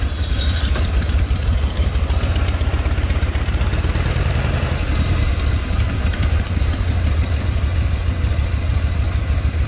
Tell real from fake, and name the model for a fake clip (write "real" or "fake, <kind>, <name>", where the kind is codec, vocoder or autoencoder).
real